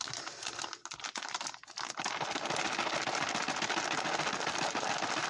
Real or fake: real